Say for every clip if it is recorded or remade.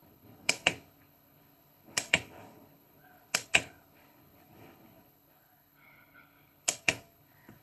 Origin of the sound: remade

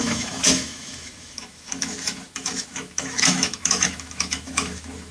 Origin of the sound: remade